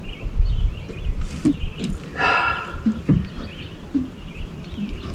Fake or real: real